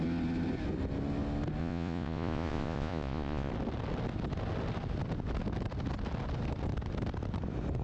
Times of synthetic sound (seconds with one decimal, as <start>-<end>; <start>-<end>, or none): 1.6-3.5